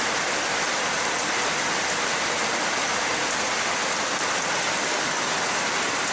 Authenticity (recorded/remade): recorded